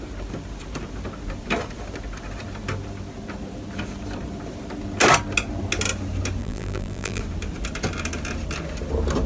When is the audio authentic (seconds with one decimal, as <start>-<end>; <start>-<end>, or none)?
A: 0.0-6.4; 7.2-9.3